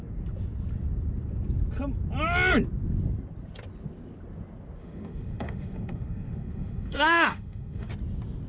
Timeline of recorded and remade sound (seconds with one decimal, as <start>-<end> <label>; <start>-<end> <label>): 0.0-4.8 recorded; 4.8-7.9 remade; 7.9-8.5 recorded